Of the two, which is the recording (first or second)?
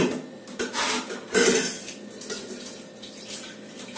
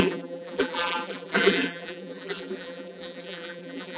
first